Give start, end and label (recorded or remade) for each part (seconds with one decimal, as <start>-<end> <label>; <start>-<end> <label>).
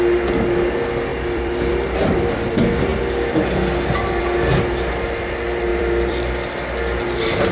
0.0-1.1 recorded; 1.1-1.7 remade; 1.7-5.7 recorded; 5.7-6.5 remade; 6.5-7.5 recorded